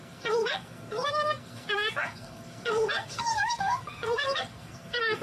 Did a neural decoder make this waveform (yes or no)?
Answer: yes